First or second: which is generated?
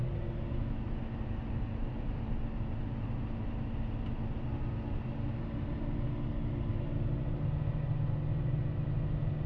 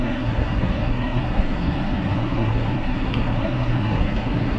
second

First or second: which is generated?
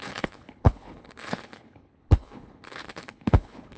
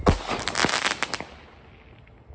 first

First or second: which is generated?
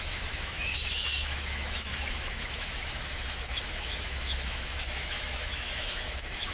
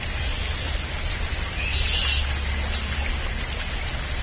first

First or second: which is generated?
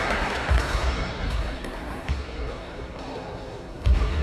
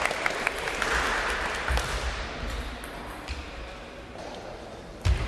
first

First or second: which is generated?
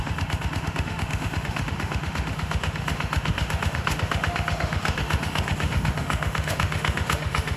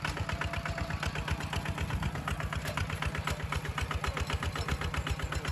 first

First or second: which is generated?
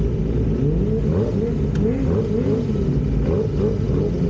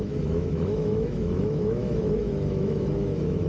second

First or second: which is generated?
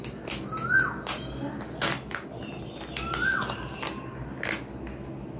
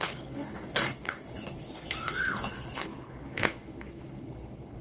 second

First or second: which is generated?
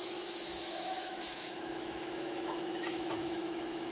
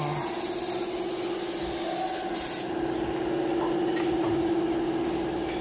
first